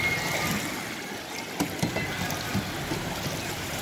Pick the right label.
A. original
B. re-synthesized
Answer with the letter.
A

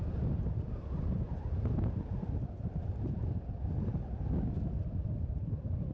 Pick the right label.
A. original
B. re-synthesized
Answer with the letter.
A